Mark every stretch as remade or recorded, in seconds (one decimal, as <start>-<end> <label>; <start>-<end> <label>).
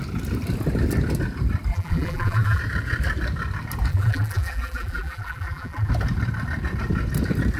0.0-1.7 recorded; 1.7-2.6 remade; 2.6-3.9 recorded; 3.9-5.9 remade; 5.9-7.6 recorded